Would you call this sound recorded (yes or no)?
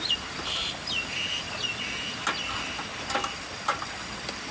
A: yes